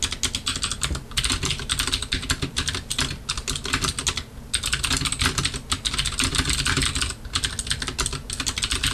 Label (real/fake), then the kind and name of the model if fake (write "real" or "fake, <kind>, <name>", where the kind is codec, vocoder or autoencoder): real